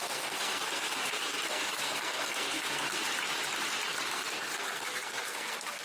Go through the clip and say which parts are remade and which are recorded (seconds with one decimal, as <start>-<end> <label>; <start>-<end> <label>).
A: 0.0-3.0 remade; 3.0-4.1 recorded; 4.1-5.8 remade